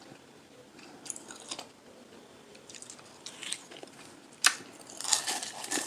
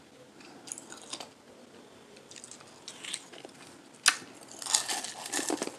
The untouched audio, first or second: second